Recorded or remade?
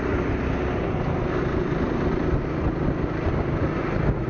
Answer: recorded